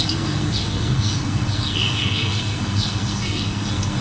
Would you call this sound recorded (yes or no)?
no